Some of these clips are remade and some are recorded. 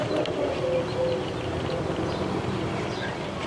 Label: recorded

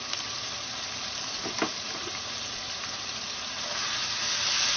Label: remade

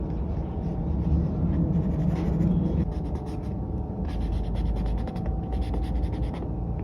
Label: recorded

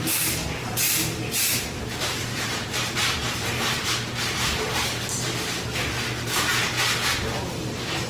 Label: remade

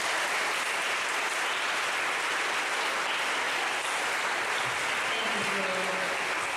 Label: recorded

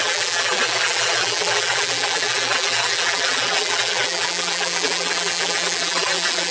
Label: remade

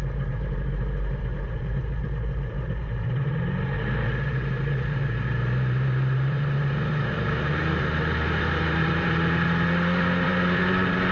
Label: remade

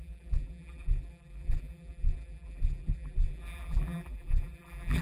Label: remade